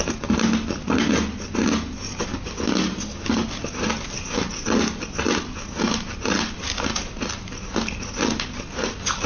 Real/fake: real